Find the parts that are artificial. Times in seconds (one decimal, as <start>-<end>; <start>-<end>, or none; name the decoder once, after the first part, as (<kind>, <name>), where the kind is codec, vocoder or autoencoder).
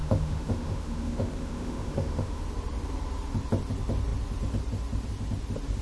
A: 0.0-2.4 (autoencoder, DAC-VAE)